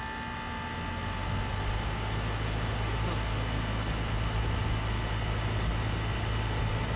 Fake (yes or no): no